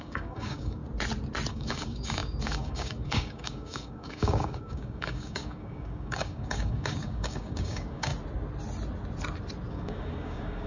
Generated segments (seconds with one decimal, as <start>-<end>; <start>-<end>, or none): 0.0-0.8; 1.5-8.1; 9.7-10.7